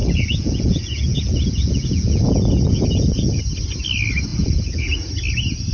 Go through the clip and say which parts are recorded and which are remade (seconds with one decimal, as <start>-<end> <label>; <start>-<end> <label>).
0.0-3.4 remade; 3.4-4.3 recorded; 4.3-5.1 remade; 5.1-5.7 recorded